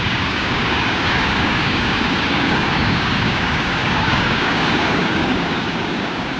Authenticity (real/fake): fake